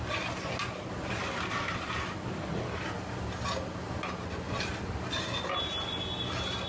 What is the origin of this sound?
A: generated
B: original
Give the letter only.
B